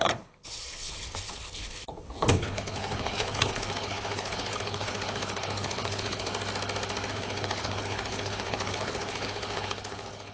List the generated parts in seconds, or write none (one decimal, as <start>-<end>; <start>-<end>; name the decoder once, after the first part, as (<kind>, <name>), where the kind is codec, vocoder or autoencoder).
0.0-6.3 (codec, HILCodec); 7.1-10.3